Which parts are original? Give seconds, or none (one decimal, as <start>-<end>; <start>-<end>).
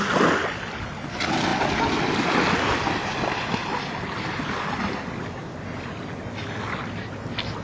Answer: 0.0-7.6